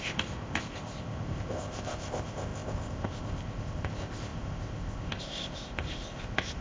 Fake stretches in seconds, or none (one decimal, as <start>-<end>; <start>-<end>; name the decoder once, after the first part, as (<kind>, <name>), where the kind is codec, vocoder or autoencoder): 0.0-6.6 (codec, ZipCodec)